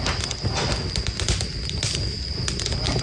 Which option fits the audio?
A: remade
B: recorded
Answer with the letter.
B